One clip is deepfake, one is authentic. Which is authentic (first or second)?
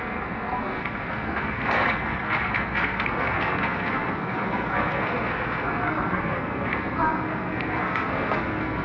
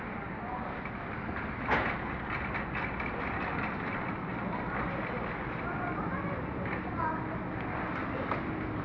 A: second